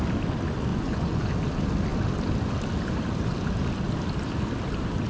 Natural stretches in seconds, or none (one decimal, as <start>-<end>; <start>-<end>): 0.0-0.7; 1.3-5.1